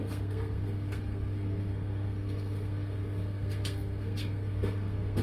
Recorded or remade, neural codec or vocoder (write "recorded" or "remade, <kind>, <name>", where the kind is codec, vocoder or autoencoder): remade, codec, SNAC